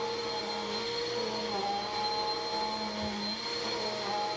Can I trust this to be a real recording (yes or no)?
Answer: yes